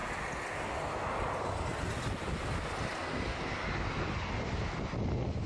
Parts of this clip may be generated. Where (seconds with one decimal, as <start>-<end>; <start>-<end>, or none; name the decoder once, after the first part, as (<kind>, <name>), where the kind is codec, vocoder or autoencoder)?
none